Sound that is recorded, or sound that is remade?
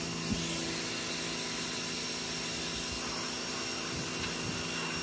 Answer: recorded